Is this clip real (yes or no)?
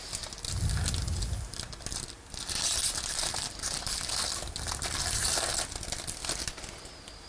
yes